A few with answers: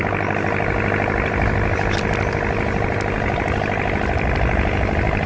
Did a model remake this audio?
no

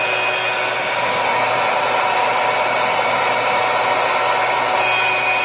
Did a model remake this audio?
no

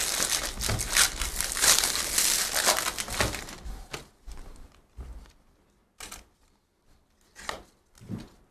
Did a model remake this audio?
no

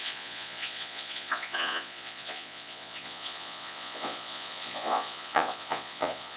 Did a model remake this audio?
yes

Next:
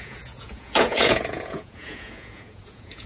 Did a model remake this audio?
yes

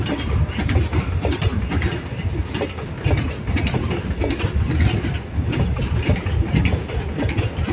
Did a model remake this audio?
no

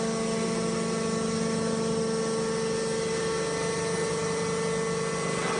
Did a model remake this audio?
no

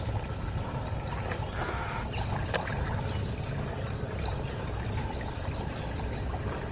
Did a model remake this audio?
no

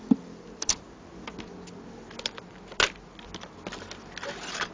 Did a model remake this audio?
no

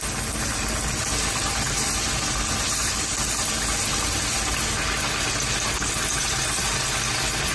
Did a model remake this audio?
no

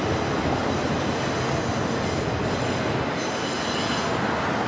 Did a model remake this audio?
no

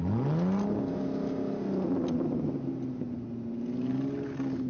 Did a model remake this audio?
no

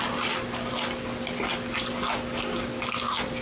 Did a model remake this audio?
no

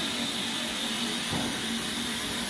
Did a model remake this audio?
no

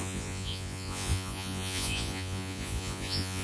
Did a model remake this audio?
yes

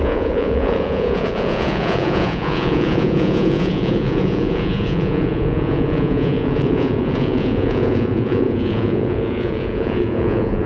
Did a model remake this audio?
yes